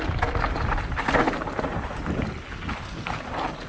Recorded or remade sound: recorded